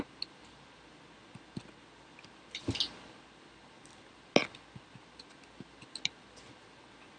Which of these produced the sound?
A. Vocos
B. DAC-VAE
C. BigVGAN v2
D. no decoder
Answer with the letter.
D